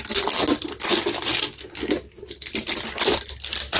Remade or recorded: recorded